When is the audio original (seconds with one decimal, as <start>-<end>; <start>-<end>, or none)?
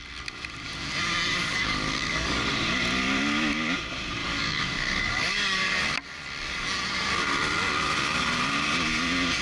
0.0-1.3; 2.5-4.2; 5.8-9.4